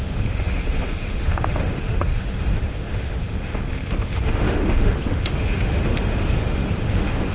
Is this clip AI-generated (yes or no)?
yes